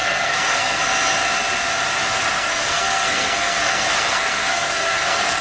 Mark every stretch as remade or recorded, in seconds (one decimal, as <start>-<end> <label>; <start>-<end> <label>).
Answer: 0.0-0.8 remade; 0.8-2.2 recorded; 2.2-5.4 remade